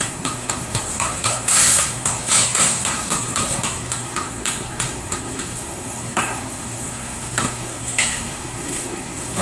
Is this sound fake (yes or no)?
yes